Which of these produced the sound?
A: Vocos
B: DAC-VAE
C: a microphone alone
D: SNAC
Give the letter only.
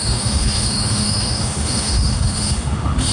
B